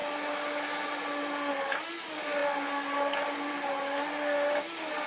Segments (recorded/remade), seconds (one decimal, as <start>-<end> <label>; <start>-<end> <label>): 0.0-5.1 recorded